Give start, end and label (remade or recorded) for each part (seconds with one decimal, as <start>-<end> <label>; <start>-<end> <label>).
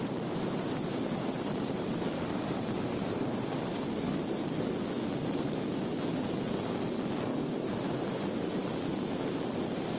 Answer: 0.0-3.9 remade; 3.9-7.6 recorded; 7.6-8.8 remade; 8.8-10.0 recorded